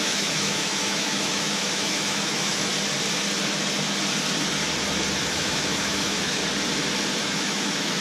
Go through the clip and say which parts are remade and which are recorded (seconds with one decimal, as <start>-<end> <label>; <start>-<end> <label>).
0.0-2.7 remade; 2.7-5.2 recorded; 5.2-6.4 remade; 6.4-7.2 recorded; 7.2-8.0 remade